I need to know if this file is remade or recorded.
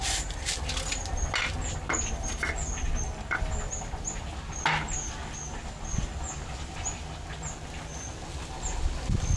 recorded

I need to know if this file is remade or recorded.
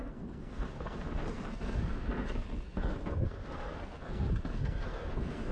remade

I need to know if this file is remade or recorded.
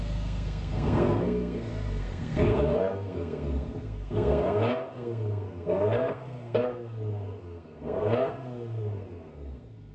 remade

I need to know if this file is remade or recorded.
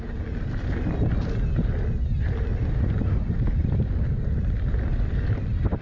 recorded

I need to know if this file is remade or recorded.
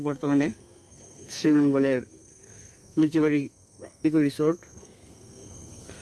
remade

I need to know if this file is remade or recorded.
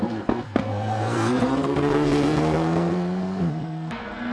remade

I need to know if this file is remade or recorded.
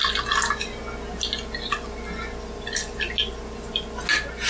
recorded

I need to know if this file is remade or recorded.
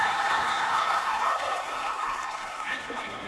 remade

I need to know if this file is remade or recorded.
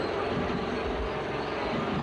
recorded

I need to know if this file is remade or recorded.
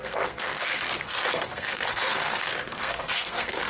remade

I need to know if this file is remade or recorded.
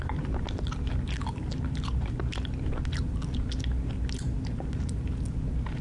recorded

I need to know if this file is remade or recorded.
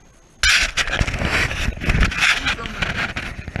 recorded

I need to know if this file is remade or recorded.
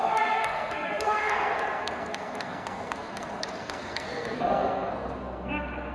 remade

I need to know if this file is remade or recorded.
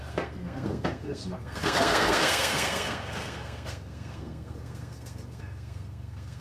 remade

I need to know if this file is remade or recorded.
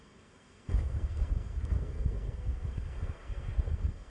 remade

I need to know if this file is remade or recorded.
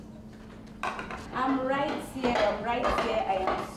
recorded